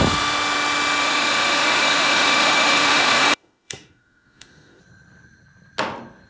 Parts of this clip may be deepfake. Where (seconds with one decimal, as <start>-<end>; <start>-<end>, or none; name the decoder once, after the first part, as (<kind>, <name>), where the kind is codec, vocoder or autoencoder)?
1.0-4.8 (autoencoder, DAC-VAE)